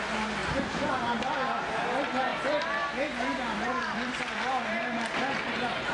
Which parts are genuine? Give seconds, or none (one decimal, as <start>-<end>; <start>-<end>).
0.0-0.4; 1.0-2.3; 4.1-5.9